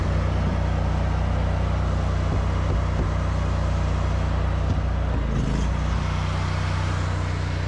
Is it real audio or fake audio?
real